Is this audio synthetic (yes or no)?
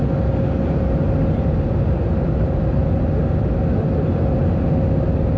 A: no